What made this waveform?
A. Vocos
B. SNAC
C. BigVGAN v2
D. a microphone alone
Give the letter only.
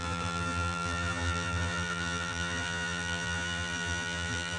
C